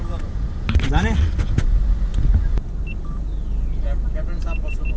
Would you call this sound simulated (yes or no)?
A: no